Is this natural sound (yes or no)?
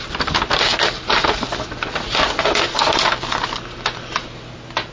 yes